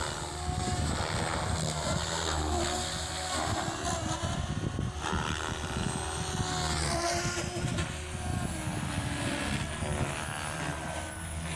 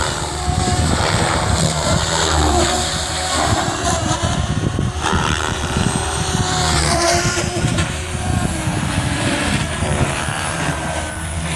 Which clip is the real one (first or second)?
first